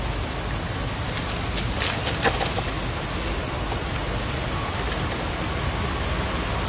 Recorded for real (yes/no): yes